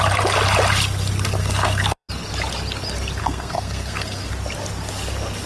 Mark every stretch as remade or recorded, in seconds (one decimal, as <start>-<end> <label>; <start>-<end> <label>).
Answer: 0.0-1.4 recorded; 1.4-2.1 remade; 2.1-3.2 recorded; 3.2-4.3 remade; 4.3-5.5 recorded